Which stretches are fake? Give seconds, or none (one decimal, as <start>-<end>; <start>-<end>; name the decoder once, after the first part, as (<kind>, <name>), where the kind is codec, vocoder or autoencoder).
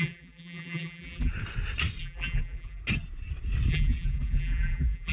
0.0-1.3 (vocoder, BigVGAN v2); 2.0-2.8; 3.7-5.1